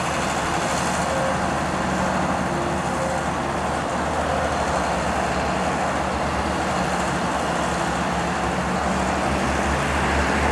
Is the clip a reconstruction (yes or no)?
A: no